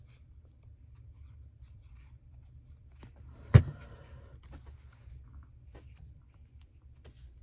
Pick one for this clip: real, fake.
real